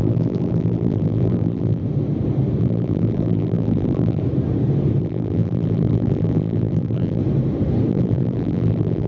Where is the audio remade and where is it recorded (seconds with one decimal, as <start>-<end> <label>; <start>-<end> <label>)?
0.0-1.8 remade; 1.8-2.6 recorded; 2.6-4.2 remade; 4.2-5.0 recorded; 5.0-7.2 remade; 7.2-7.9 recorded; 7.9-9.1 remade